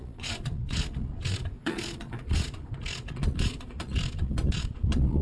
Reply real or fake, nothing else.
fake